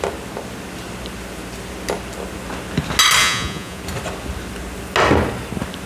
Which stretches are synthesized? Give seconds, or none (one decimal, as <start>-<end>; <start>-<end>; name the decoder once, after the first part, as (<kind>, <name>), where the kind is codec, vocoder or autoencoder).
3.2-3.8 (vocoder, Vocos)